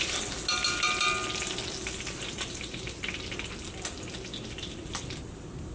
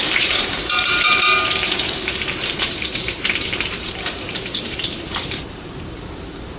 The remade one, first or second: second